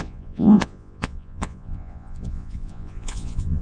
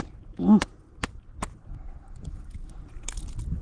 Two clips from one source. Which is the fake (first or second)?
first